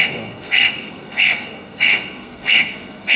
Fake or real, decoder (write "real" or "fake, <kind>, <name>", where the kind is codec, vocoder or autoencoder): fake, codec, SNAC